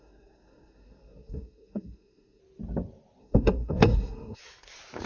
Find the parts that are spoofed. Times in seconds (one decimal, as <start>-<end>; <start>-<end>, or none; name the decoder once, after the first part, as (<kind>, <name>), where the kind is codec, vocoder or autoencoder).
0.0-2.4 (codec, SNAC); 3.2-4.4